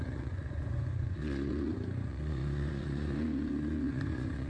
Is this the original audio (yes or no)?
no